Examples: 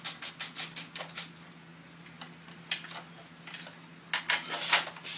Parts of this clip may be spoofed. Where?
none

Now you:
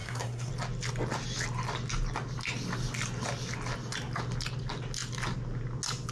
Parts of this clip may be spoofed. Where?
0.0-0.5 (codec, SNAC)

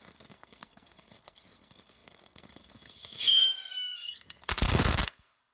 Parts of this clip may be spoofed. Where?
0.0-5.5 (codec, SNAC)

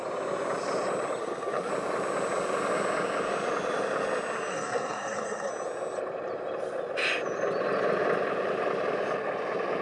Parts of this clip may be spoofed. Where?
1.2-1.7 (codec, SNAC); 4.5-5.5